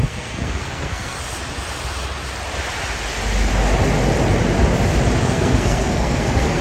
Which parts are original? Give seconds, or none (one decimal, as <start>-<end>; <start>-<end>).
1.2-5.2